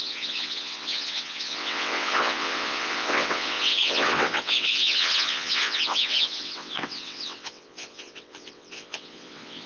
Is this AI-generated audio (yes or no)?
yes